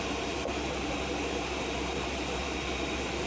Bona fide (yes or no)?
no